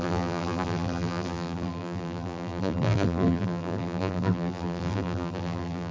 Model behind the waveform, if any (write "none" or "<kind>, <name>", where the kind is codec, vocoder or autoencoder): vocoder, BigVGAN v2